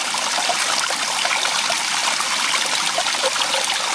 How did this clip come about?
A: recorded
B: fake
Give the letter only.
A